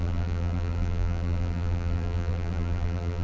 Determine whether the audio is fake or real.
fake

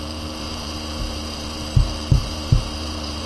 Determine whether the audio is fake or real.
fake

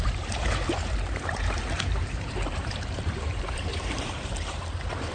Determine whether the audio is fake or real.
fake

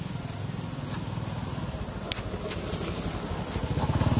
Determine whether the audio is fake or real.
real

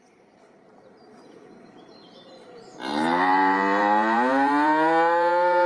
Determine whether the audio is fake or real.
fake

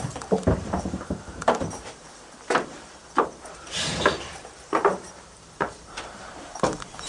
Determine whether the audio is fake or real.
fake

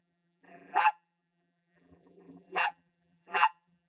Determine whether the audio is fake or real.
fake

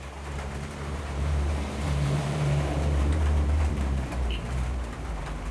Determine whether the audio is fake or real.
fake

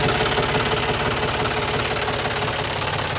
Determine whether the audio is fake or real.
real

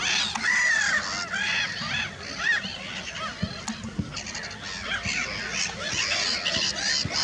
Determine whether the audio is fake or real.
real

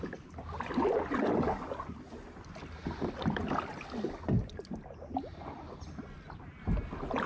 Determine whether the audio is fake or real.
real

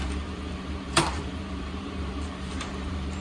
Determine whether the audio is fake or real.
fake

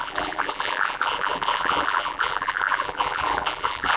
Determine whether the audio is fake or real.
fake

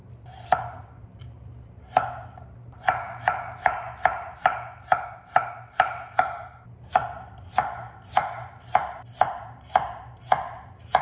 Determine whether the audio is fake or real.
fake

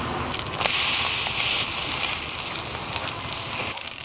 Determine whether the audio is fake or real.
real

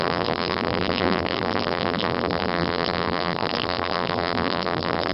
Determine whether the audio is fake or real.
fake